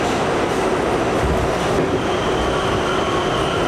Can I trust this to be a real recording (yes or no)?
yes